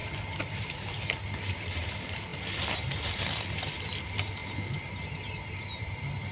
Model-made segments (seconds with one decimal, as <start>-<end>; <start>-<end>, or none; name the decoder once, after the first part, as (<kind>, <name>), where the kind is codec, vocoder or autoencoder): 0.6-2.3 (vocoder, BigVGAN v2); 3.0-4.4; 4.9-6.3